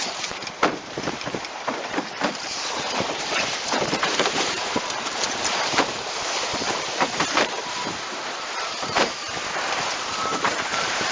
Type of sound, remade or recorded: remade